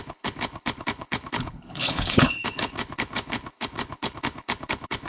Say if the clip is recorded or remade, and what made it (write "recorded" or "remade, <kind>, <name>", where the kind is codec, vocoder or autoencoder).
remade, codec, HILCodec